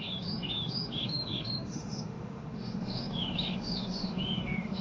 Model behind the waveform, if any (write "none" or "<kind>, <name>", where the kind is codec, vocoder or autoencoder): autoencoder, DAC-VAE